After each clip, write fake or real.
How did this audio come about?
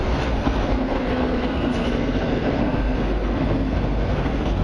fake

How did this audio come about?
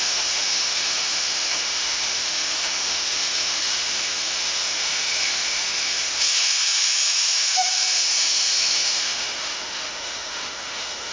fake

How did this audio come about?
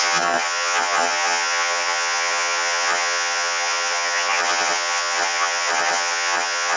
fake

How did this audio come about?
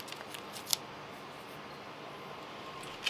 real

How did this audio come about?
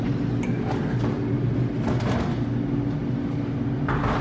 real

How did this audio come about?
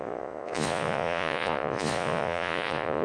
fake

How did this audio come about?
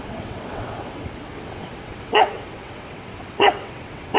fake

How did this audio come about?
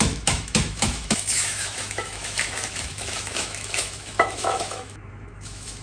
fake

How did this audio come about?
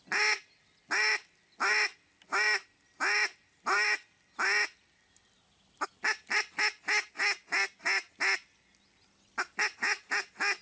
real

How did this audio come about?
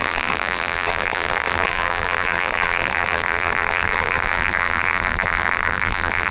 fake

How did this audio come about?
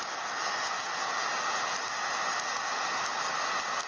fake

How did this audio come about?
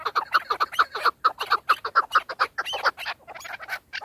real